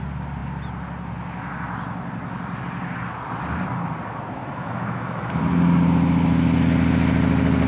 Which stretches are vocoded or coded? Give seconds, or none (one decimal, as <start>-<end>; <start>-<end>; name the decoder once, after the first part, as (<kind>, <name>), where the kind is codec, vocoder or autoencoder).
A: 4.4-5.3 (autoencoder, DAC-VAE)